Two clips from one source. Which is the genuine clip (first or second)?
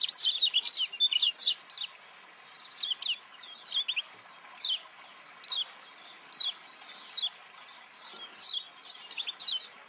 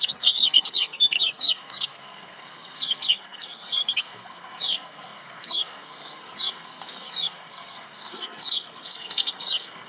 first